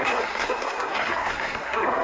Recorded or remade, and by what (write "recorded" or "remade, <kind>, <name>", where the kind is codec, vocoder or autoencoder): remade, codec, SNAC